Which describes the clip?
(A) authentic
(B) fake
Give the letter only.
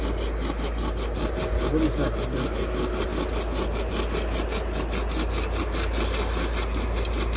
A